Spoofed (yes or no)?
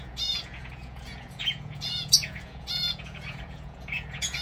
yes